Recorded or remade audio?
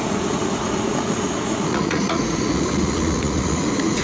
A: remade